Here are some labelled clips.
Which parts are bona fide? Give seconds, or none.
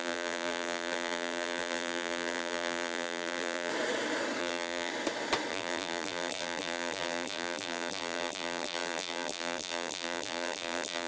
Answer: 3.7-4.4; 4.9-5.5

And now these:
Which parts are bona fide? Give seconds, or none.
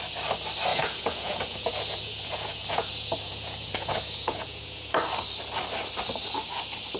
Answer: 0.0-0.7; 4.9-7.0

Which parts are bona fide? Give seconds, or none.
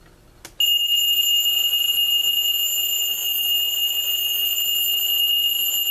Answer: 0.0-5.9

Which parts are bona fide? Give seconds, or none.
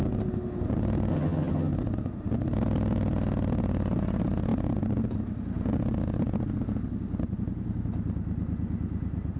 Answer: 0.0-1.1; 1.7-9.4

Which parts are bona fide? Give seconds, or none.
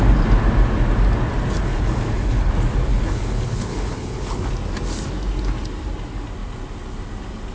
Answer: 0.0-1.7; 2.5-2.9; 4.5-7.5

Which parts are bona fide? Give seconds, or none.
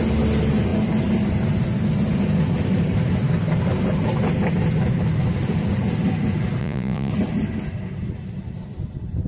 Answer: 0.0-6.6; 7.1-9.3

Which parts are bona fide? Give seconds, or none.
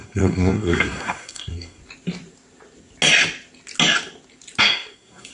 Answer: 1.8-4.6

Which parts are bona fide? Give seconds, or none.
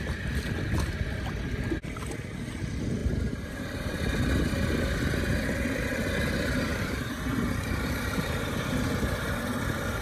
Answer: 0.0-3.0; 4.0-6.7; 9.3-10.0